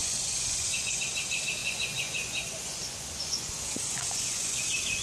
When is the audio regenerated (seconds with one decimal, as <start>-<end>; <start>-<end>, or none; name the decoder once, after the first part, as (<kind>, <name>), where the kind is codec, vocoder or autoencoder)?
0.0-1.0 (vocoder, Vocos); 1.6-4.6